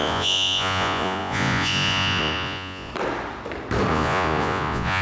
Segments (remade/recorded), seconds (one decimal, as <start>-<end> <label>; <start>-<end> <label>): 0.0-2.9 remade; 2.9-3.9 recorded; 3.9-5.0 remade